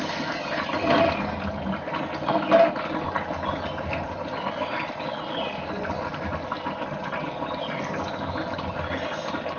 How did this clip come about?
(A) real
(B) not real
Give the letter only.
A